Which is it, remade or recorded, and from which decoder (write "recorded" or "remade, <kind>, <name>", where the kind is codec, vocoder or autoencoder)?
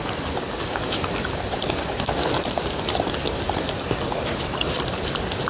recorded